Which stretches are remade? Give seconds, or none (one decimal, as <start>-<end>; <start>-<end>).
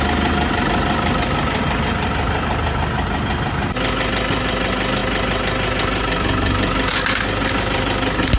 none